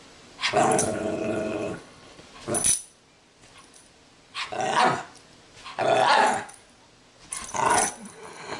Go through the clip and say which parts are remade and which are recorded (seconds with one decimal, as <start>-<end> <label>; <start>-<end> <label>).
0.0-0.8 recorded; 0.8-2.2 remade; 2.2-8.6 recorded